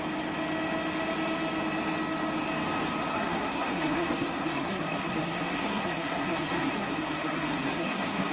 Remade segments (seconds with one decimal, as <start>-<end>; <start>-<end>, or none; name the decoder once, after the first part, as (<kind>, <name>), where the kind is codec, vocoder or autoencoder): 3.1-8.3 (codec, SNAC)